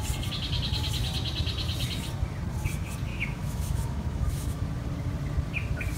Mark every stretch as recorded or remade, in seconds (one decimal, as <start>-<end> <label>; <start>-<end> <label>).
0.0-3.1 recorded; 3.1-4.6 remade; 4.6-6.0 recorded